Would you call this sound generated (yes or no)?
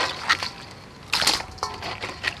no